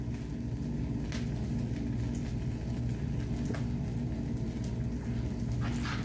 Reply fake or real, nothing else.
real